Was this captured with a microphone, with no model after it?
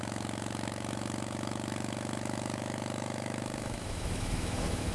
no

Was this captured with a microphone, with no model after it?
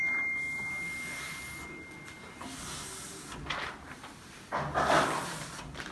yes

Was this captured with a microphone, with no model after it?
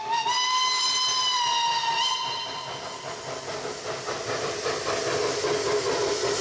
yes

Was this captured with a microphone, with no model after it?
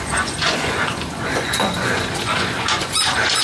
no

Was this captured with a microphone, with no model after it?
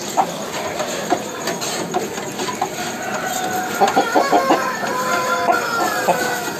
yes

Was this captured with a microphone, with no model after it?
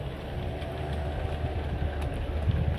yes